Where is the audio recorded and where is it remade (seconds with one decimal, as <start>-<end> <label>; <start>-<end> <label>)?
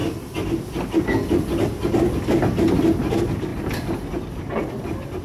0.0-5.2 recorded